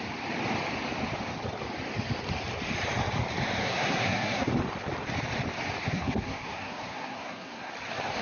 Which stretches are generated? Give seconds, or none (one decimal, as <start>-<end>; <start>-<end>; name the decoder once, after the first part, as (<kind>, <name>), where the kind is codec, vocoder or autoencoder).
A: 3.6-4.5 (codec, SNAC); 5.8-7.7

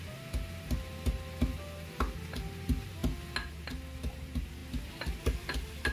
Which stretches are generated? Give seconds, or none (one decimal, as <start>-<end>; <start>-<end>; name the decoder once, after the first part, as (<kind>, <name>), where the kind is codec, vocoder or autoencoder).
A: none

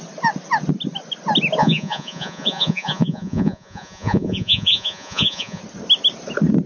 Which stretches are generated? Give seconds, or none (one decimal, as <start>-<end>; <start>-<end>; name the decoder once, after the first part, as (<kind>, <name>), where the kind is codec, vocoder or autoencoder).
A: 1.6-5.6 (vocoder, Vocos)

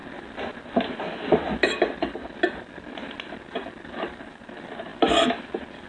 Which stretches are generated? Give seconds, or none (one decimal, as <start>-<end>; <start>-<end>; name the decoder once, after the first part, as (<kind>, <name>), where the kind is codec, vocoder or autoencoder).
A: none